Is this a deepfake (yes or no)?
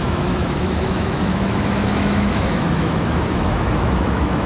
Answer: yes